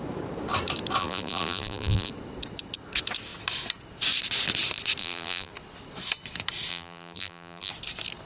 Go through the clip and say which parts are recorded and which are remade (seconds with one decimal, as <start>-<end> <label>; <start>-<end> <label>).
0.0-1.0 recorded; 1.0-2.1 remade; 2.1-5.0 recorded; 5.0-5.5 remade; 5.5-6.7 recorded; 6.7-7.7 remade; 7.7-8.3 recorded